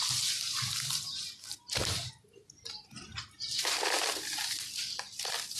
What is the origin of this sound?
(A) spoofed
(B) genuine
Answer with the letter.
B